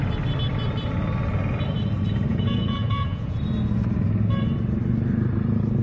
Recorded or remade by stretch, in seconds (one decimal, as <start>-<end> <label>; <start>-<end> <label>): 0.0-2.3 recorded; 2.3-3.4 remade; 3.4-5.8 recorded